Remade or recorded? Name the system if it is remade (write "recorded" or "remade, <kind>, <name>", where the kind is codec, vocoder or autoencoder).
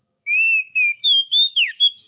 remade, codec, DAC